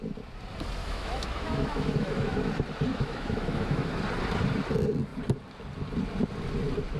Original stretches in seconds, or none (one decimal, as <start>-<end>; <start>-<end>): 0.0-0.8; 2.5-2.9; 4.0-7.0